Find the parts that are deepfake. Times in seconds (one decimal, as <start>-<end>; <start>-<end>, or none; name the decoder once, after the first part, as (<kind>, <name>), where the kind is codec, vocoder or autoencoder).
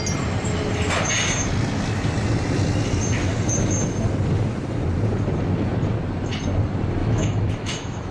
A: 7.0-8.1 (autoencoder, DAC-VAE)